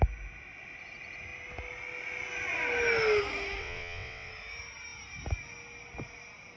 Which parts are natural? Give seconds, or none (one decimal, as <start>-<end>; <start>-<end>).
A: 0.0-3.6; 4.3-6.6